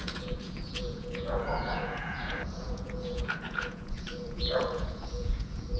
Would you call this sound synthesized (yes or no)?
yes